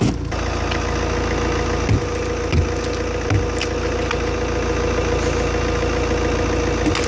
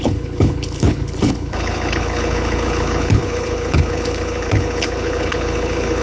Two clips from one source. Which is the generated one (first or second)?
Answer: second